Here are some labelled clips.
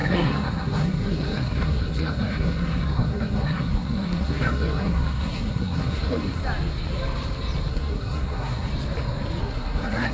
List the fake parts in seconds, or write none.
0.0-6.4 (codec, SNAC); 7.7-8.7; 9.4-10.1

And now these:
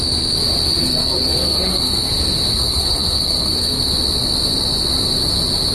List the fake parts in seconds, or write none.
0.8-2.1 (codec, SNAC); 2.5-3.8

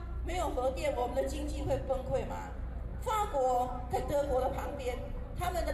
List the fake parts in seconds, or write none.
none

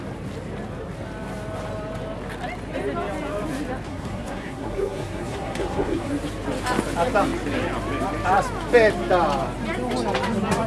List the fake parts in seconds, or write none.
3.9-6.1 (codec, SNAC)